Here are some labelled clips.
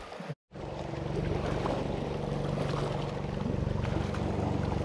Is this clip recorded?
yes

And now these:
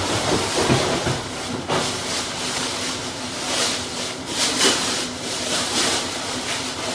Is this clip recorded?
no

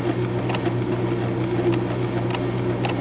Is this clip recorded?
yes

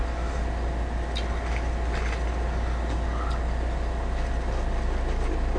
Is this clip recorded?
yes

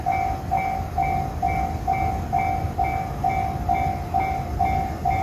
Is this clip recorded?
yes